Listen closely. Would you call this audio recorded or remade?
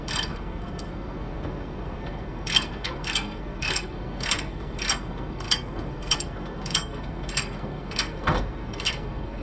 remade